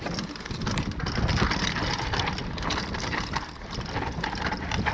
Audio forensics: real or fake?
real